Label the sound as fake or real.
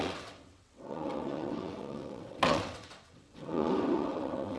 fake